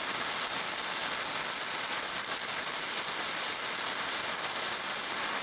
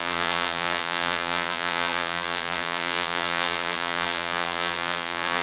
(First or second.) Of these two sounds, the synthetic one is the second